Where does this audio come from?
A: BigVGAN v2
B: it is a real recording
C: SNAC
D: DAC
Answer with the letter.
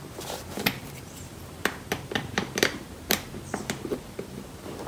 A